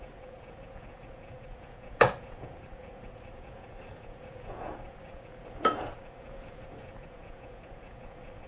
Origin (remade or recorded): remade